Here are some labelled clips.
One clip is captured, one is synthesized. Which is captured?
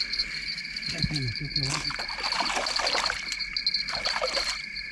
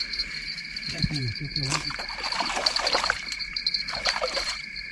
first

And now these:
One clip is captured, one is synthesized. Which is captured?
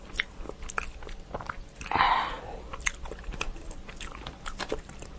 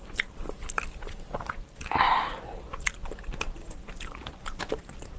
first